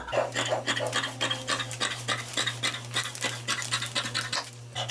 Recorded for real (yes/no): yes